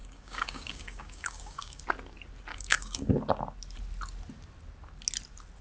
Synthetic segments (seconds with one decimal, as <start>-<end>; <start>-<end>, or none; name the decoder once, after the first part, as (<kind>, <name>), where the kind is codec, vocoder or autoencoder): 0.0-1.8 (codec, DAC); 2.5-3.1